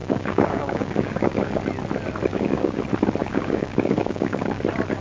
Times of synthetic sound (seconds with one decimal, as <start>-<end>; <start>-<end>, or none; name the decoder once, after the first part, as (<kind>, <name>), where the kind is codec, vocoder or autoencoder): 0.0-1.6 (codec, DAC); 2.3-2.8; 3.2-4.6